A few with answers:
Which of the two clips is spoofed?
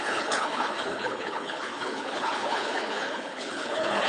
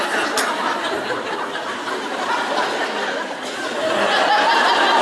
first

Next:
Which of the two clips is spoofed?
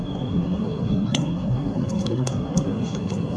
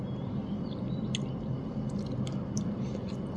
first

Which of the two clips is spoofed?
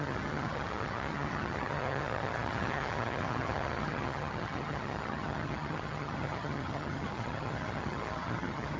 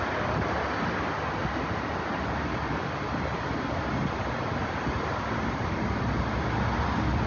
first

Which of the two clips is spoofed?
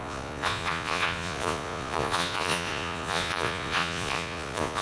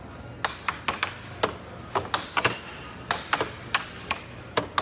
first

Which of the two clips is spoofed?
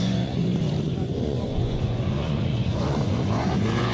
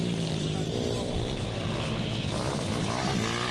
first